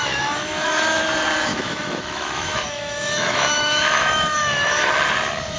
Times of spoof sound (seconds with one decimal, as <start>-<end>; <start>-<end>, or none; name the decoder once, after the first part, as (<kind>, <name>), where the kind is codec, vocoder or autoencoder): 0.0-1.0 (autoencoder, DAC-VAE); 1.5-4.9